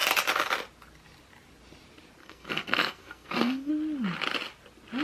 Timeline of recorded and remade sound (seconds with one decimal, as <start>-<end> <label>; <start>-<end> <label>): 0.0-2.2 recorded; 2.2-3.7 remade; 3.7-5.0 recorded